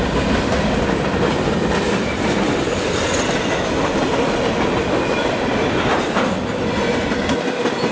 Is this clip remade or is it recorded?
recorded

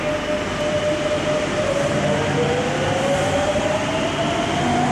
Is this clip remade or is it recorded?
recorded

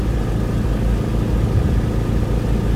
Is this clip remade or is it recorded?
recorded